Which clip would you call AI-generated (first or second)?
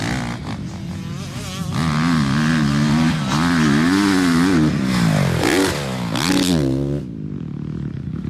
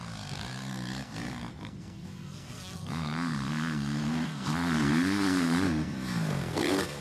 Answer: second